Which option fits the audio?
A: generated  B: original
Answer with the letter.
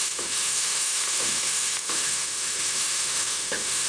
A